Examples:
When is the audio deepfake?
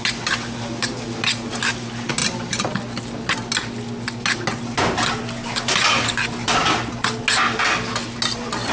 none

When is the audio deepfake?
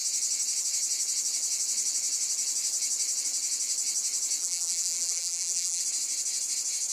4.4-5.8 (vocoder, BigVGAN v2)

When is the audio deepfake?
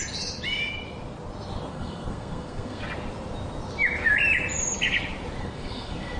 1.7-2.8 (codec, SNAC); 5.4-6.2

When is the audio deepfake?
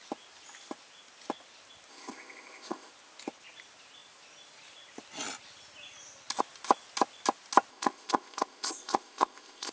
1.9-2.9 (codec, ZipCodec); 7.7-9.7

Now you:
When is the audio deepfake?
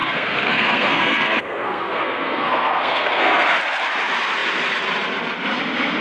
0.0-3.6 (codec, SNAC)